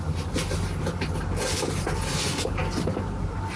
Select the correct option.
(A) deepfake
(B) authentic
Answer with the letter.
B